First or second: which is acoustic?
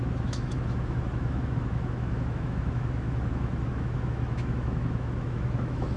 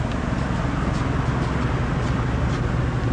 second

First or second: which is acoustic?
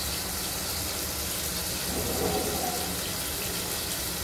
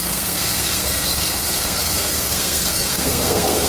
first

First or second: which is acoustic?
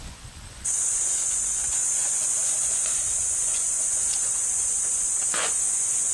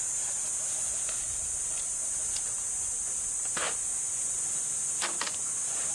second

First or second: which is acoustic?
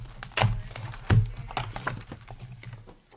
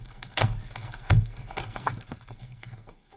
first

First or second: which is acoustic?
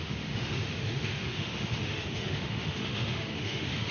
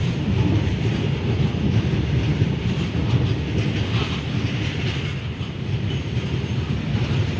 second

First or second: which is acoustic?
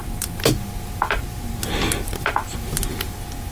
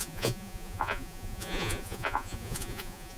first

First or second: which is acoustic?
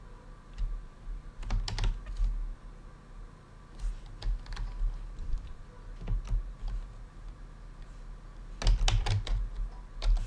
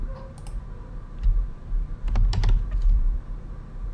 first